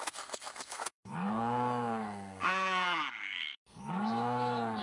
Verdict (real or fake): fake